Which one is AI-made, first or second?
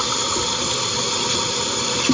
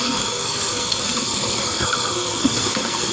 second